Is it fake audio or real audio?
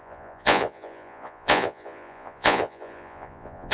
fake